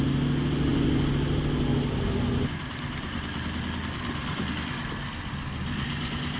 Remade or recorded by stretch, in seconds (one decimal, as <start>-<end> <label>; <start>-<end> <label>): 0.0-6.4 recorded